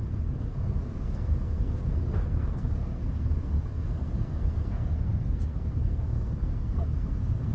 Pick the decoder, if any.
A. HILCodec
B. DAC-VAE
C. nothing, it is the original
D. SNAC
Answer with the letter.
D